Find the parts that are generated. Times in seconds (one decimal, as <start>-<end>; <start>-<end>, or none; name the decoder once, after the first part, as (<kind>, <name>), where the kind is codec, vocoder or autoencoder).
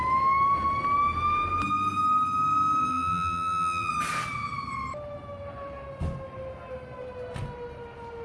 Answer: 2.9-3.9 (vocoder, BigVGAN v2)